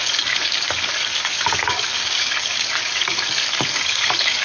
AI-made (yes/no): yes